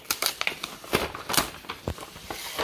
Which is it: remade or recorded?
recorded